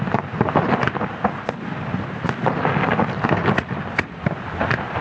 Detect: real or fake real